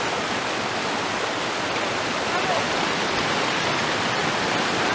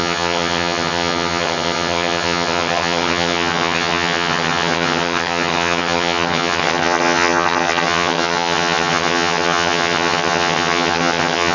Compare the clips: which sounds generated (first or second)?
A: second